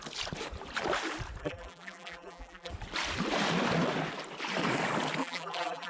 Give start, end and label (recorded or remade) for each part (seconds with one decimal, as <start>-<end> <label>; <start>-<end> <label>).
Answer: 0.0-1.4 recorded; 1.4-2.7 remade; 2.7-5.2 recorded; 5.2-5.9 remade